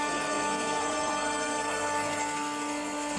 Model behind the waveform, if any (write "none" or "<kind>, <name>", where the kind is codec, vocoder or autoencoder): codec, SNAC